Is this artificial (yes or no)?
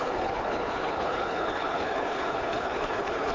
yes